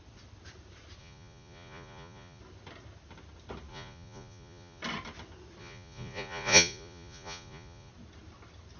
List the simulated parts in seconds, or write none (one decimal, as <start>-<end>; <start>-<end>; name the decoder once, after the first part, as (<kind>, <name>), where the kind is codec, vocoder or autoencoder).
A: 1.0-2.4 (vocoder, Vocos); 3.7-4.8; 5.6-7.9